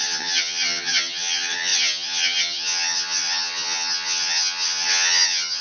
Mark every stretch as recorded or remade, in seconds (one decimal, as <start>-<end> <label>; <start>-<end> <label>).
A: 0.0-5.6 remade